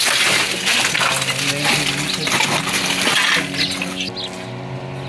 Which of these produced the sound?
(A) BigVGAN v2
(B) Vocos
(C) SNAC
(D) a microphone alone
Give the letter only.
D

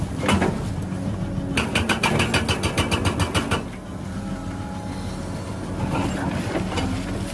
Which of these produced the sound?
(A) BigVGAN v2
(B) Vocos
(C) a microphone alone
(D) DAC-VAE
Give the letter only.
C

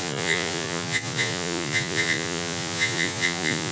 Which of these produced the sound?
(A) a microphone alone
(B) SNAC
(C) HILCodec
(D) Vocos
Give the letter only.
D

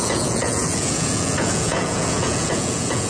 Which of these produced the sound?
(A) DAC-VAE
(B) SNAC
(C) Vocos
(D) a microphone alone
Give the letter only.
C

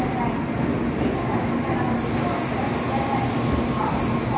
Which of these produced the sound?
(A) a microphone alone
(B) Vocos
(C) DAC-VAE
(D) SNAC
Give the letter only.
A